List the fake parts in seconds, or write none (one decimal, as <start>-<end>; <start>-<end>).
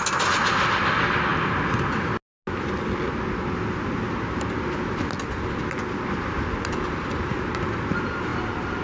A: none